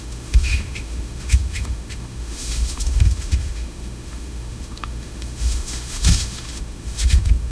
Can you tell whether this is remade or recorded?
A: remade